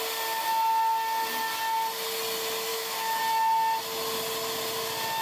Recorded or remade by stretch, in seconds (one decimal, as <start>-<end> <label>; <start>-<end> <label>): 0.0-2.7 recorded; 2.7-3.2 remade; 3.2-5.2 recorded